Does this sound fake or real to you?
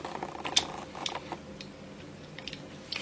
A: real